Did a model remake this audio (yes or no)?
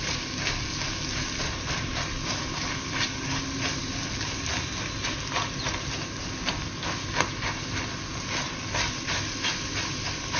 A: no